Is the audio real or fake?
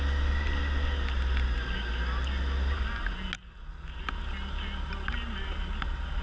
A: real